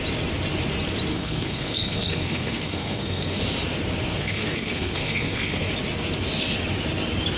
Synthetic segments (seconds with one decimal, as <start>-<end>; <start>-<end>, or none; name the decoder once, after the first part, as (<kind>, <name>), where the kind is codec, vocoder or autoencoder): 1.1-3.4 (codec, SNAC); 4.1-5.7